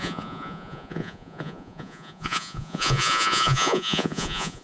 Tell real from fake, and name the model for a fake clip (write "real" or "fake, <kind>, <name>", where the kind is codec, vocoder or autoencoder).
fake, vocoder, Vocos